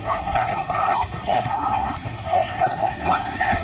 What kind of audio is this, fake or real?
fake